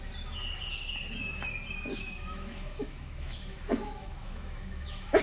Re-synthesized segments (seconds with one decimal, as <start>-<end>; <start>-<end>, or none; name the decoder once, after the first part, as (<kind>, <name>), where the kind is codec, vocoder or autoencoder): 1.9-5.2 (autoencoder, DAC-VAE)

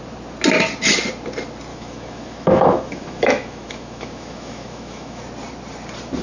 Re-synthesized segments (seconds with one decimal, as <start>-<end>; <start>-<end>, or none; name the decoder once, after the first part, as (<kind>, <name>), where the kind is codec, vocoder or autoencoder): 1.7-5.2 (autoencoder, DAC-VAE)

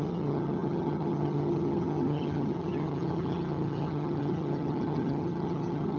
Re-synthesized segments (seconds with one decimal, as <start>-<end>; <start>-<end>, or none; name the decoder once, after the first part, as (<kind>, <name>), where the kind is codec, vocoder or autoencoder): 0.0-6.0 (vocoder, HiFi-GAN)